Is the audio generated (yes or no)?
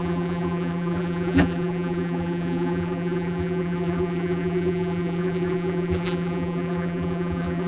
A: yes